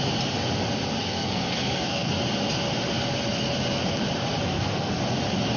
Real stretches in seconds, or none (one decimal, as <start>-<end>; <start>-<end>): 0.0-1.0; 2.1-4.4; 5.0-5.6